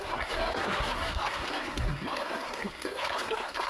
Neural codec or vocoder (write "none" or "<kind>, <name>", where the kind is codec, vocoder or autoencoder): codec, SNAC